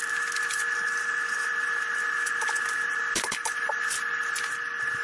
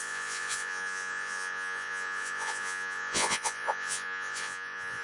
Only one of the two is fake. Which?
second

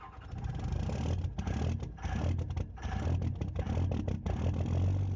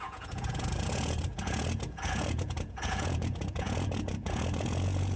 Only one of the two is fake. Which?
second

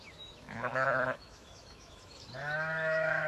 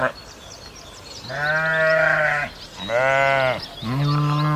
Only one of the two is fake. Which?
first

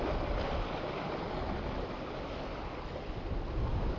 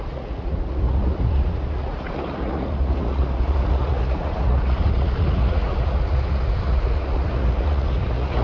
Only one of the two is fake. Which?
second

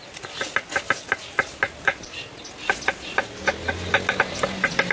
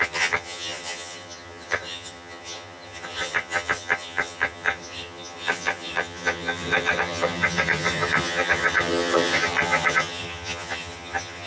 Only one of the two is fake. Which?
second